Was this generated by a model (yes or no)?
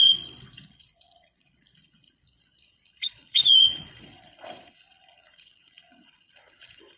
yes